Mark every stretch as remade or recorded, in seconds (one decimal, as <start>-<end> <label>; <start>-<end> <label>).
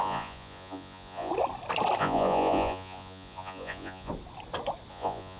0.0-1.3 remade; 1.3-2.0 recorded; 2.0-4.1 remade; 4.1-4.9 recorded; 4.9-5.4 remade